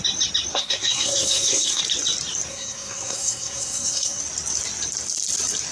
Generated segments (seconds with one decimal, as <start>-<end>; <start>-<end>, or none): 0.5-1.8; 2.5-4.2